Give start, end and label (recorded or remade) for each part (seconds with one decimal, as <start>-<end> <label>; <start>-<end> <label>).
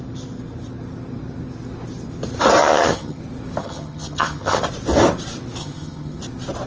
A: 0.0-2.6 recorded; 2.6-3.2 remade; 3.2-3.6 recorded; 3.6-4.6 remade; 4.6-5.6 recorded; 5.6-6.2 remade; 6.2-6.7 recorded